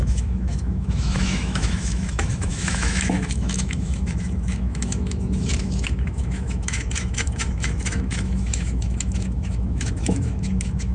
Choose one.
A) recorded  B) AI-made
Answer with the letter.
B